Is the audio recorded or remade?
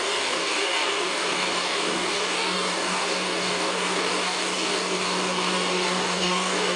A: remade